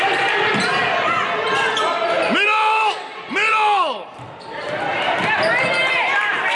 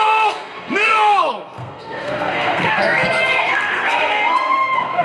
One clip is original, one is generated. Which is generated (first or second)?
second